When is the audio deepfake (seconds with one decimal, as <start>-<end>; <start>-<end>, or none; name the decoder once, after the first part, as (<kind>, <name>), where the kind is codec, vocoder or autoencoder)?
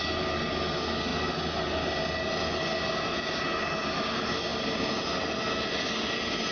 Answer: none